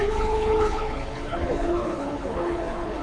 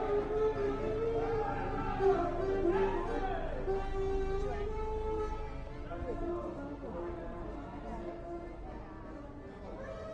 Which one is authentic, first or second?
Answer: second